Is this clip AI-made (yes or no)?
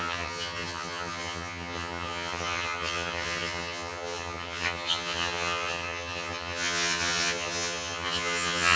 yes